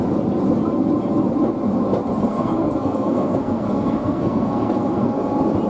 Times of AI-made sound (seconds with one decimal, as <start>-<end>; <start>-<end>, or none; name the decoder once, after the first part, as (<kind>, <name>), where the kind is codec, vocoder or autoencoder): 2.2-5.2 (codec, SNAC)